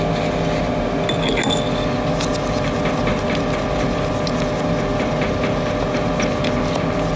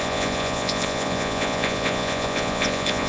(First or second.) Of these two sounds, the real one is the first